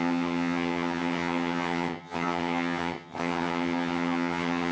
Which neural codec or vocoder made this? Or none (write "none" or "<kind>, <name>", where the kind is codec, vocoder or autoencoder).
vocoder, HiFi-GAN